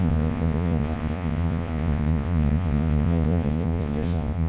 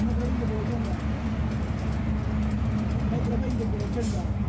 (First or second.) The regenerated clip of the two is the first